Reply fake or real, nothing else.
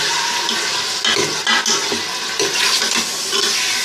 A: real